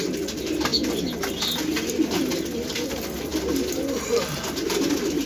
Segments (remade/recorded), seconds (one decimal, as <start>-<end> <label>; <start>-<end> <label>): 0.0-5.3 recorded